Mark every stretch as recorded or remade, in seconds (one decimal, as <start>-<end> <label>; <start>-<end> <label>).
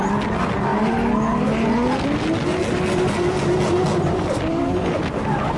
0.0-4.5 recorded; 4.5-5.0 remade; 5.0-5.6 recorded